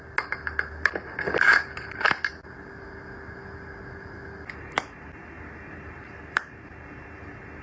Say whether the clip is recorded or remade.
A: recorded